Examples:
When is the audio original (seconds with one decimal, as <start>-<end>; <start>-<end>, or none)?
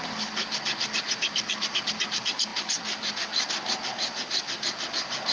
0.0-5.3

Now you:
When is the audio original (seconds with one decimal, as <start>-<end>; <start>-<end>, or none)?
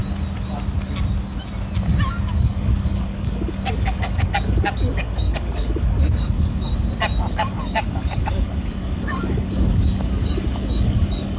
0.0-2.3; 6.7-7.3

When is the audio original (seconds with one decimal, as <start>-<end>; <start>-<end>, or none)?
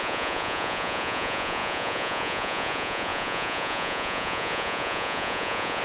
none